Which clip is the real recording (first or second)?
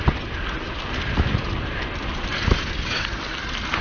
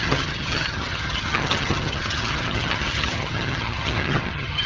first